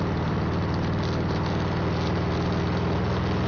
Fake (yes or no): no